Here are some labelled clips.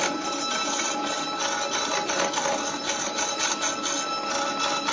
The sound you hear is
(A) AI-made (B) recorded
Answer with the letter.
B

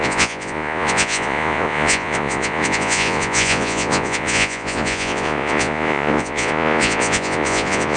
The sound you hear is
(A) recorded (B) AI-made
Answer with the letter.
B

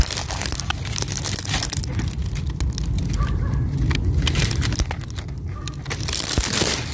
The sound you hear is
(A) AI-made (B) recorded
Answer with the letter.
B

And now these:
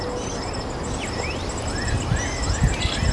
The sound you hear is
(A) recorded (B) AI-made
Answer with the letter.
A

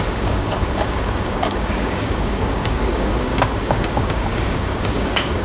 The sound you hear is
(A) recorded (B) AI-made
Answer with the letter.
B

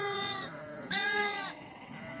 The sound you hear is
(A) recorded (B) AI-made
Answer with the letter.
B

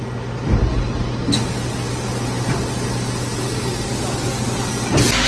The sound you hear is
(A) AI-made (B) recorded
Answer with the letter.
B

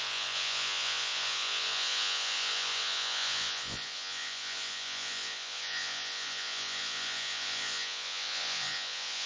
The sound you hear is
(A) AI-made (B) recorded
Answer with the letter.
A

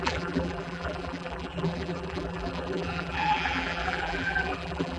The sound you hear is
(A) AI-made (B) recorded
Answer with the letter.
A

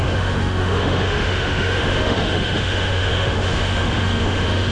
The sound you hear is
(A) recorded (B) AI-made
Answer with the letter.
B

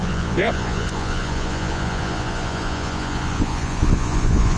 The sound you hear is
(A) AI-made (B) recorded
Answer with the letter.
A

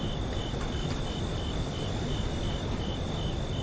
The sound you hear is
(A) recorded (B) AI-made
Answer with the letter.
A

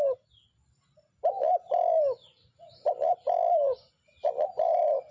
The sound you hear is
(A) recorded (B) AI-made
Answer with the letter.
A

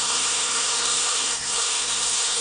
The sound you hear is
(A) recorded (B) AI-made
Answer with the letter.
B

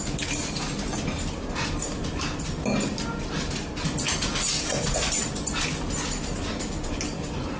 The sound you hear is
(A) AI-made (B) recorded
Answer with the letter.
B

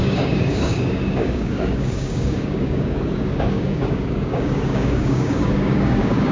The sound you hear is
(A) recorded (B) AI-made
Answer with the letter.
B